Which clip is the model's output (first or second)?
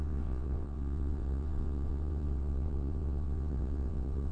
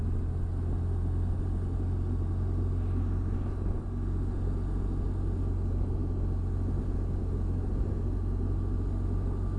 first